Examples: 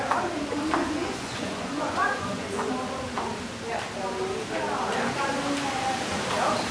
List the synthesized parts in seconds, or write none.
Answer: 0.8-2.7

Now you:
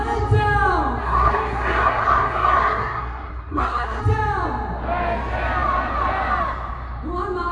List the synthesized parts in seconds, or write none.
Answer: 1.0-4.0

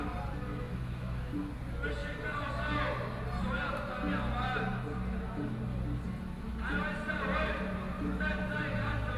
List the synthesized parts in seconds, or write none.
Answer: 0.5-1.3

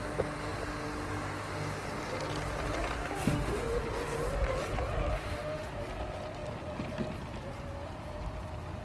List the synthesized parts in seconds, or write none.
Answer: 3.3-3.8; 5.2-5.7

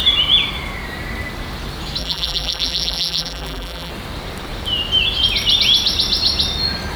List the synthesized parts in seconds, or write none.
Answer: 2.0-3.9